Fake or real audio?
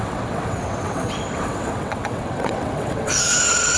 fake